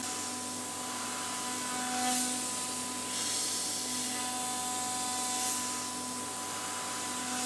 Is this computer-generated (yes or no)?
no